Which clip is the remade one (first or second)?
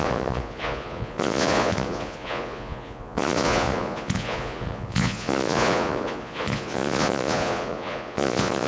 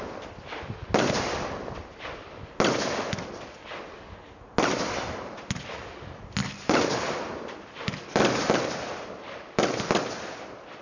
first